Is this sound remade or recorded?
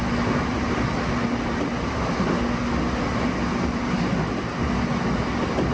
recorded